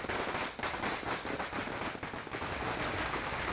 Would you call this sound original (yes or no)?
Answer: yes